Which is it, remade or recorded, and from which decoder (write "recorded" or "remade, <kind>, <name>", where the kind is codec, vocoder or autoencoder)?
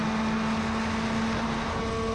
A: recorded